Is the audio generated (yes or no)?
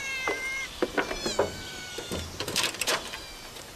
yes